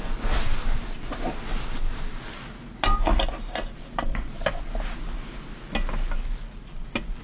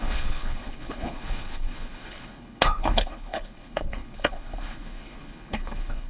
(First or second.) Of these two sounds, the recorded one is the first